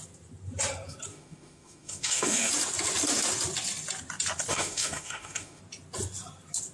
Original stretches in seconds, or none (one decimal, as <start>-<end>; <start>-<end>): 0.0-1.1; 2.5-4.5; 5.6-6.7